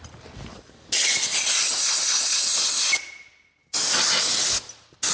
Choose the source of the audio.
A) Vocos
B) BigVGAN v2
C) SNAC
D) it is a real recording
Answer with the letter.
D